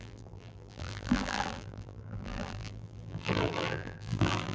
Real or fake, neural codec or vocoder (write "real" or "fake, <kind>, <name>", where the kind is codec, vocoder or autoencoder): fake, vocoder, BigVGAN v2